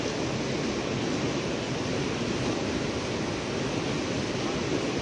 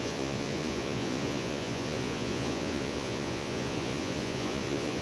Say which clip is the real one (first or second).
first